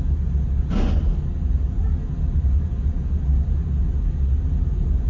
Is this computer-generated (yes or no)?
no